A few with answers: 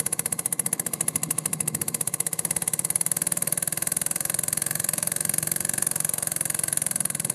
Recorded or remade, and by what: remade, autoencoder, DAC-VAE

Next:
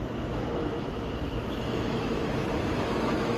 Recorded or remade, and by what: remade, autoencoder, DAC-VAE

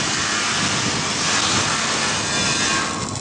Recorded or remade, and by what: recorded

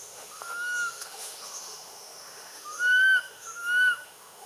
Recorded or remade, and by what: remade, autoencoder, DAC-VAE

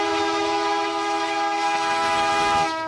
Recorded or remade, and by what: remade, autoencoder, DAC-VAE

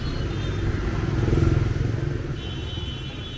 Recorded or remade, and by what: recorded